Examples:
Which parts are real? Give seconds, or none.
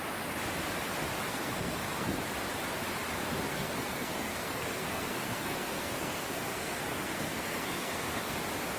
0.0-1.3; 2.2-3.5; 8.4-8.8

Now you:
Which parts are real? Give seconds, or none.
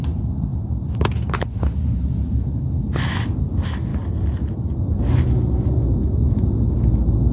0.0-7.3